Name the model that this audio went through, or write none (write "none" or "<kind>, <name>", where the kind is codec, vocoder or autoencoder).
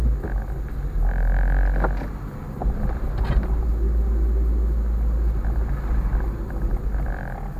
none